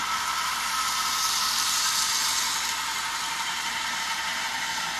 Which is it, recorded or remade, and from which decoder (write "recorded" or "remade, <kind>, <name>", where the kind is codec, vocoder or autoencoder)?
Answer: remade, vocoder, BigVGAN v2